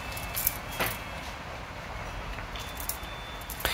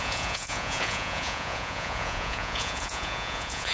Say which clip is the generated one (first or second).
second